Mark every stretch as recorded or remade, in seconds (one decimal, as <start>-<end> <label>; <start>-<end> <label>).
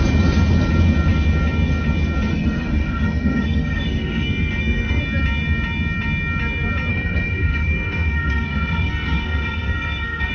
0.0-2.3 recorded; 2.3-5.0 remade; 5.0-6.9 recorded; 6.9-10.3 remade